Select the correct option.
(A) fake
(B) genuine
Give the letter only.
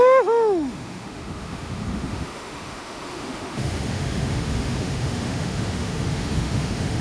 A